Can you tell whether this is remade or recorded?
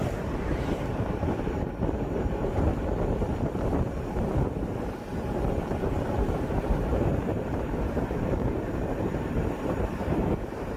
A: remade